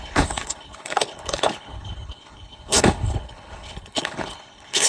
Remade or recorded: remade